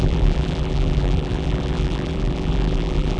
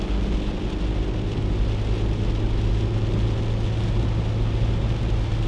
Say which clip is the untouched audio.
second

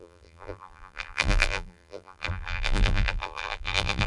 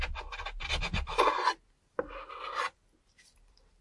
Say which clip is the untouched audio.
second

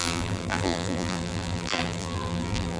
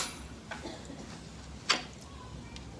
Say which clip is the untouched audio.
second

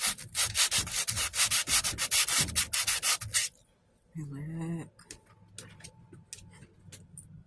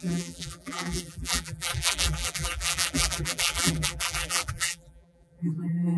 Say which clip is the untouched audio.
first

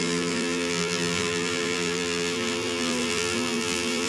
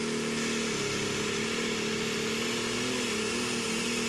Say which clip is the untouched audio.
second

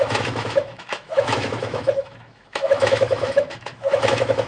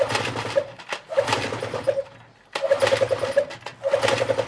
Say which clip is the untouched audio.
second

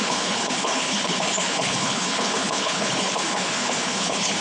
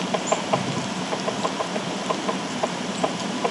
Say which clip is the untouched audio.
second